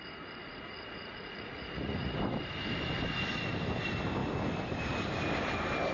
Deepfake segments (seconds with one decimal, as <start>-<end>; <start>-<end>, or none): 0.4-2.2